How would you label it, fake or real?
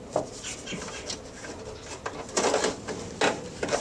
real